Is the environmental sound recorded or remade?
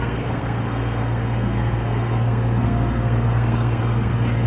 remade